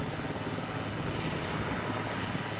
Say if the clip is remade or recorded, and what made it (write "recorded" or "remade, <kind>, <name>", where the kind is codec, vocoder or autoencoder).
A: recorded